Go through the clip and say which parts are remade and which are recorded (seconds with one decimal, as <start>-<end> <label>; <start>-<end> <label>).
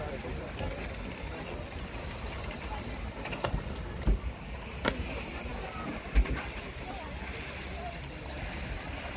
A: 0.0-9.2 recorded